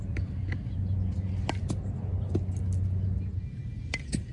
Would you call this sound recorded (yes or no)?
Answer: yes